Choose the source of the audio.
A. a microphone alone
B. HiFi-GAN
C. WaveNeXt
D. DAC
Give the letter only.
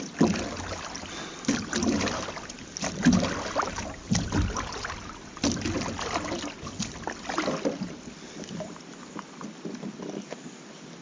A